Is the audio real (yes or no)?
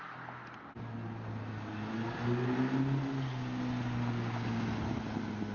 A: yes